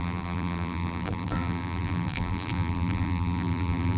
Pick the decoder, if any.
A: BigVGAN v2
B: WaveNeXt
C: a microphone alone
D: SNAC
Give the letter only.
A